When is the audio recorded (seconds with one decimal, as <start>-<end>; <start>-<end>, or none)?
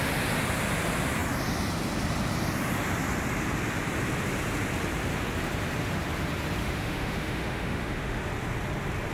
0.0-6.6; 8.2-9.1